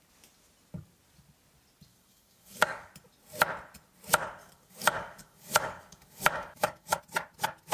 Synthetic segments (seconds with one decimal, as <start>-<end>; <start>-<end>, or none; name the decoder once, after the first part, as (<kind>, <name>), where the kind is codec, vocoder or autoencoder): 1.9-2.9 (codec, DAC); 4.4-7.0